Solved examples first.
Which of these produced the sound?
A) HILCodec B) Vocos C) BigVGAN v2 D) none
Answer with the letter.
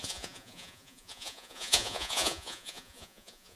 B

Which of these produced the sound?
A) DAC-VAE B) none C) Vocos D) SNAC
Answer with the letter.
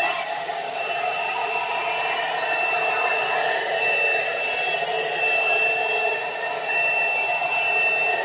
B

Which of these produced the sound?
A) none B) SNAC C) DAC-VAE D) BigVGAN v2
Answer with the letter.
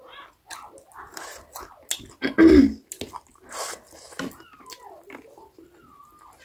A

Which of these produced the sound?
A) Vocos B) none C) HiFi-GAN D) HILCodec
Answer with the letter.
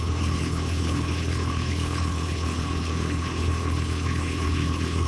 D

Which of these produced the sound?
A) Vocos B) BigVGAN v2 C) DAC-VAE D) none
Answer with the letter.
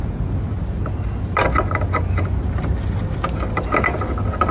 D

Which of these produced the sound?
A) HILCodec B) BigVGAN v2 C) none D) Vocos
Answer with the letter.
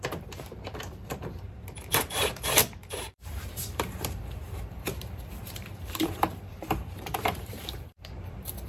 B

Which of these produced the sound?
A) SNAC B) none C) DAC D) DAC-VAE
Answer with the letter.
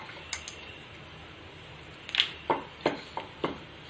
B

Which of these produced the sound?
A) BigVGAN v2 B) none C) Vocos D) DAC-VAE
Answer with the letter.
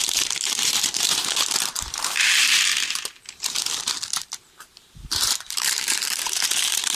A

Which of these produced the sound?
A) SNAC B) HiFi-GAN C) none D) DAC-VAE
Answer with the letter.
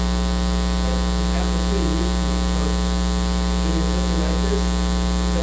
C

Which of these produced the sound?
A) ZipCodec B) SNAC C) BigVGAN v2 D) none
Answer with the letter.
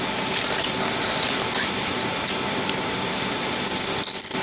D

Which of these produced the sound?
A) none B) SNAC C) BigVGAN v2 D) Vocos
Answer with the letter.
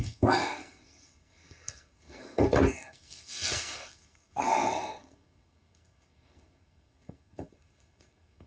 B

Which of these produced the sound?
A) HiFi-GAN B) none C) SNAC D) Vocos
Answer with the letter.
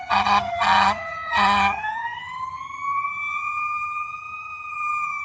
A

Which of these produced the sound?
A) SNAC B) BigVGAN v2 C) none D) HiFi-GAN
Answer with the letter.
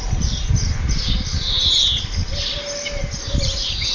C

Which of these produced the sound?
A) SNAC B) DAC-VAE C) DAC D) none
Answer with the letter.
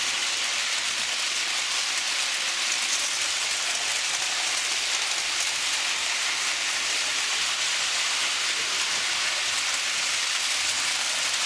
D